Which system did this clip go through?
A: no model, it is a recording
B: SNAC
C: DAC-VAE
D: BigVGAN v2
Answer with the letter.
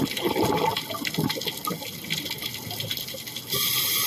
A